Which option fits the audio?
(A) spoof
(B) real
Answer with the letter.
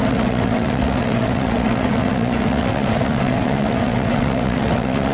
A